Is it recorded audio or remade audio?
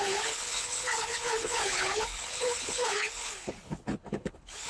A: remade